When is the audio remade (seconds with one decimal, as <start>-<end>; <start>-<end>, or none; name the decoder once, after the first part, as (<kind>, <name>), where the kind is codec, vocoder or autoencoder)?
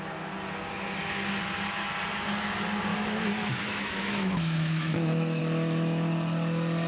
2.9-5.4 (autoencoder, DAC-VAE)